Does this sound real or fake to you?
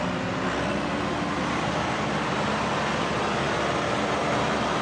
real